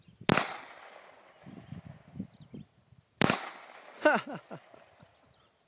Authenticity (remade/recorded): recorded